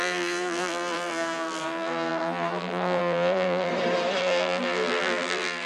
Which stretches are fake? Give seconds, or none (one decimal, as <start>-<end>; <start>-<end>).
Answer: 0.0-3.7; 4.2-5.7